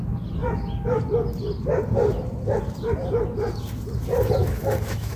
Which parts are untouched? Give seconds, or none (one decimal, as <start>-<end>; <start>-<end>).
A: 0.0-4.4